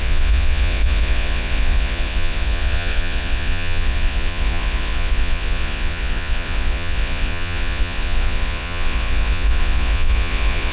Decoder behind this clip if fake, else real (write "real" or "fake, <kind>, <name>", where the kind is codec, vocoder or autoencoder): fake, vocoder, Vocos